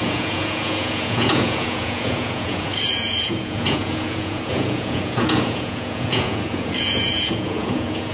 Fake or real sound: fake